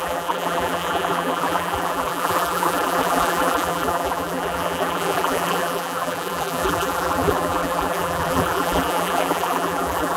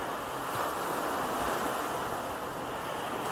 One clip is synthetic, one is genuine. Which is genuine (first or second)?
second